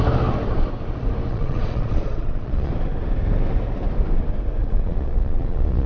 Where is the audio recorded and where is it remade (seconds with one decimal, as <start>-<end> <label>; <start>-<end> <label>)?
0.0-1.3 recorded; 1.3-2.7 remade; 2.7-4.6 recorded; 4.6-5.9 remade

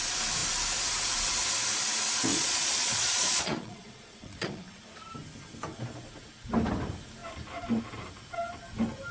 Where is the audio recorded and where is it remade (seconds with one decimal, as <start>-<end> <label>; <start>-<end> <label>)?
0.0-2.3 recorded; 2.3-4.8 remade; 4.8-9.1 recorded

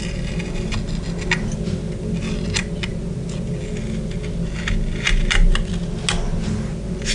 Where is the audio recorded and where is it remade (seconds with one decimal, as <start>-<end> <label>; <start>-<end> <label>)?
0.0-7.1 recorded

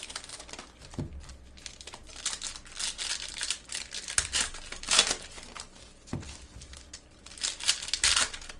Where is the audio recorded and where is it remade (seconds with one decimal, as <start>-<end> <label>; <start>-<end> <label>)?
0.0-8.6 recorded